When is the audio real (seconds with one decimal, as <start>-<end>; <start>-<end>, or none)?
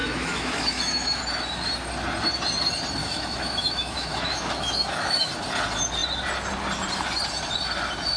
1.2-3.0; 5.3-8.2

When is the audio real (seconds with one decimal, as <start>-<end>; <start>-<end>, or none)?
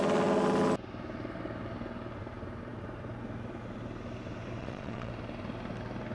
0.0-4.6; 5.1-6.1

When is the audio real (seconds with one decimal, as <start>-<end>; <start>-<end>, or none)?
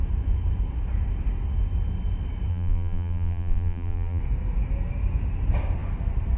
0.0-2.5; 4.2-6.4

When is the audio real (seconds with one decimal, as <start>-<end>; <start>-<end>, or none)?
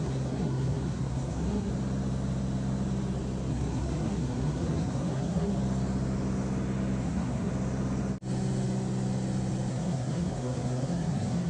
1.7-3.5; 5.5-7.0; 7.5-9.7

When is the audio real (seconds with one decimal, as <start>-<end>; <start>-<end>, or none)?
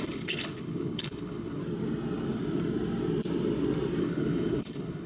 1.6-4.0